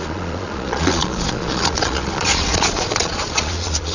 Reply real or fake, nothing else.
fake